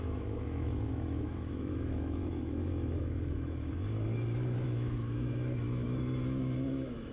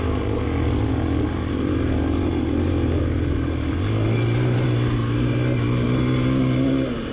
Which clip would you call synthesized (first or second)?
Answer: first